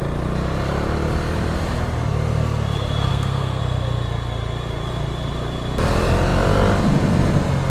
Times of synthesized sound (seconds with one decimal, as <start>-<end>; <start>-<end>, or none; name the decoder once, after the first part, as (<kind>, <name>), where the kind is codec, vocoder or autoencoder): 3.1-3.6 (codec, SNAC)